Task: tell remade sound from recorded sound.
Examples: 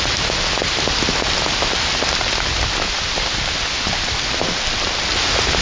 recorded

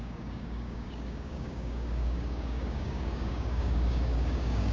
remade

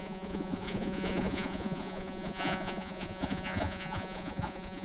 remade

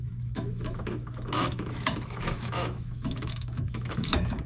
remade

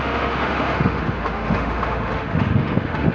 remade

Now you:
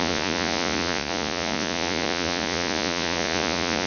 remade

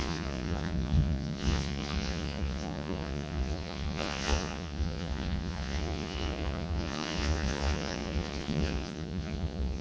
remade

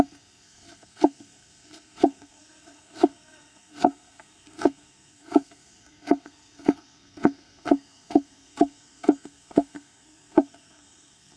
remade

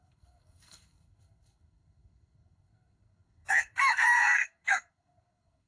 remade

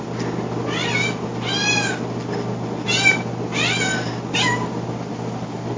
recorded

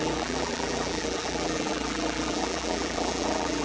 remade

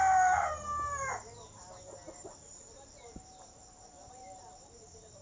recorded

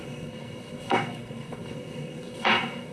remade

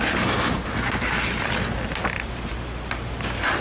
recorded